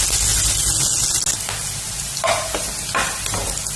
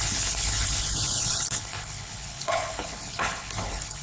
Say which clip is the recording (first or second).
first